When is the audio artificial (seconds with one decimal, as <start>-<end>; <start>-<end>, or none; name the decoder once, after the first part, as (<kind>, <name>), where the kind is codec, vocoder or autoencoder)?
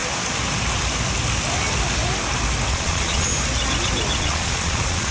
2.7-3.3 (vocoder, Vocos); 4.2-5.1